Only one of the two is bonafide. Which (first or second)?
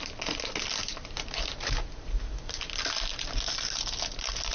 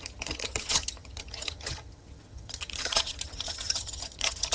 first